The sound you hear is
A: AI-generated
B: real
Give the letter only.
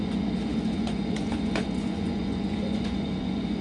A